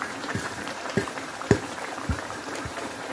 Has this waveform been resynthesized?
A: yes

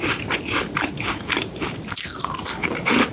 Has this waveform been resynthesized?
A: yes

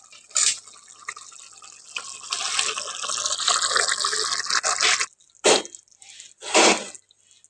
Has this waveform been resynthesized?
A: no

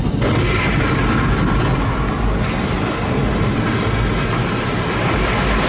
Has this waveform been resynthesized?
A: no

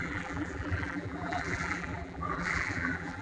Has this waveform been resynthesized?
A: yes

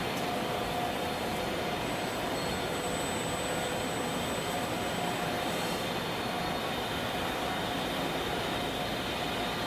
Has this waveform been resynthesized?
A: no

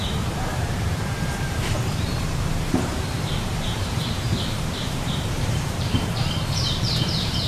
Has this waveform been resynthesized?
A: yes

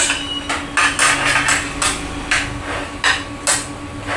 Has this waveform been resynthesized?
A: no